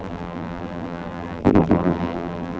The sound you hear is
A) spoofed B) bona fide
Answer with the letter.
A